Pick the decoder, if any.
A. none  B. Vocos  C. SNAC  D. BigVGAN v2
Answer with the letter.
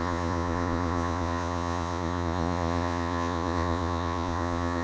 B